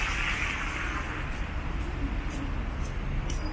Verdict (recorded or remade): recorded